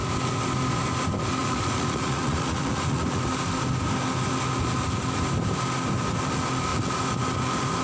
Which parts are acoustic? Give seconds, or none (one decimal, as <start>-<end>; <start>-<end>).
0.0-1.4; 3.2-7.8